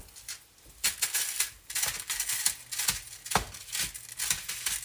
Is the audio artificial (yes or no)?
no